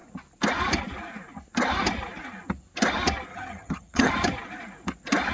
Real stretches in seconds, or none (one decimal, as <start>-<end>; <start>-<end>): 0.0-3.3; 4.1-5.3